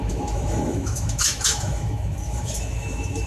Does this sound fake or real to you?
fake